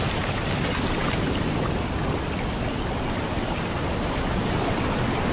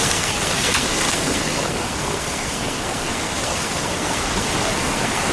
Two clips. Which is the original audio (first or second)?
first